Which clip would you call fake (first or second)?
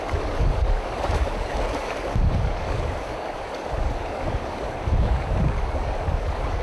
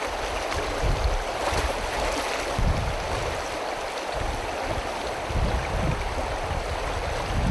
first